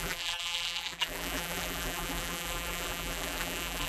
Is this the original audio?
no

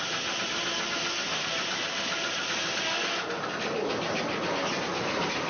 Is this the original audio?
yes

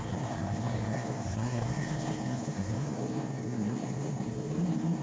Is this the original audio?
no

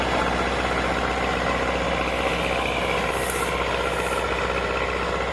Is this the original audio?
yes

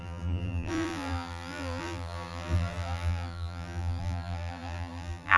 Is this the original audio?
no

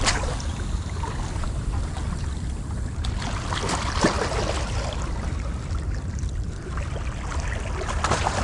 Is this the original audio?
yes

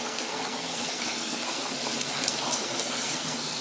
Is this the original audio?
no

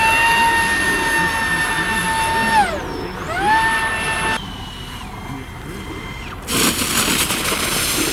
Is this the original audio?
yes